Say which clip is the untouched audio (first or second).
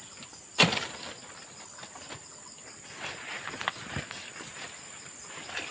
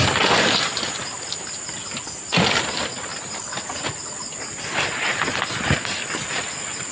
second